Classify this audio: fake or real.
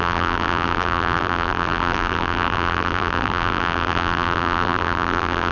fake